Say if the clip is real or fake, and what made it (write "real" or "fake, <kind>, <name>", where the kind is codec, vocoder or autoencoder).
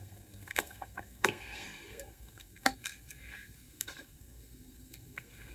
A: fake, codec, SNAC